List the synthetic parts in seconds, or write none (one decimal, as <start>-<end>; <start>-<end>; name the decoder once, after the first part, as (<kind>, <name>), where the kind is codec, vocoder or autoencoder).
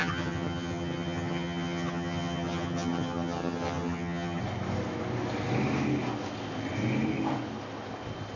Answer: 0.0-4.4 (vocoder, HiFi-GAN)